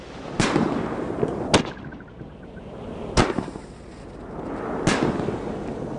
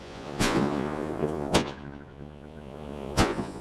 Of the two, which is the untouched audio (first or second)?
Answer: first